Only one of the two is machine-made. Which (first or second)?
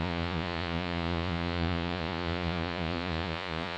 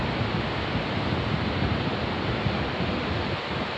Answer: first